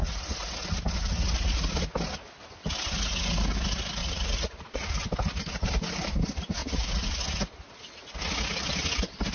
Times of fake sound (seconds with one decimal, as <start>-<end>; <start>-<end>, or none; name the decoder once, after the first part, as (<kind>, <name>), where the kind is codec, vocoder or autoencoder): 4.0-4.9 (vocoder, Vocos); 6.6-7.2

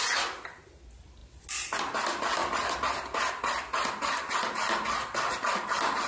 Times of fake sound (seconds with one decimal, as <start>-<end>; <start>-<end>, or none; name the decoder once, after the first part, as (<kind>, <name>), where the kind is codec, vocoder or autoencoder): none

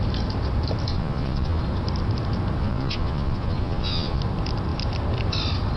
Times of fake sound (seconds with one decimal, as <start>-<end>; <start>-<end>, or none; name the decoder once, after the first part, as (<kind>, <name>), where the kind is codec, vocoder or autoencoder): 0.9-1.6 (vocoder, Vocos); 2.6-4.2

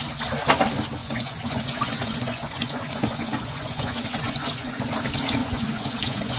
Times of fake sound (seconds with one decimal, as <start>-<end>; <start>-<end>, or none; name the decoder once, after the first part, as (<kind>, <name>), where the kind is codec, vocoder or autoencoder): 1.0-4.8 (vocoder, Vocos); 5.4-6.4

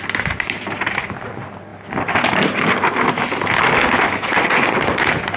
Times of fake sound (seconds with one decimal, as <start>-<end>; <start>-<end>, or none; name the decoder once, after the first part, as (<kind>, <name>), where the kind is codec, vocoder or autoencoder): none

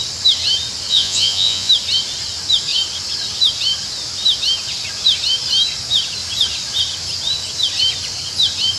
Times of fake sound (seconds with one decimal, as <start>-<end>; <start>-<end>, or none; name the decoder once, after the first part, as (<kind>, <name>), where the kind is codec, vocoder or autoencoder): 0.9-1.7 (vocoder, Vocos)

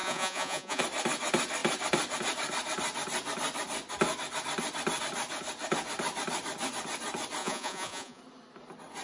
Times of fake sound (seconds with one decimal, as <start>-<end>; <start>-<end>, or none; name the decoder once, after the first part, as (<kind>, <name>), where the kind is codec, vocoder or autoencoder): 0.0-0.8 (vocoder, Vocos); 7.4-8.2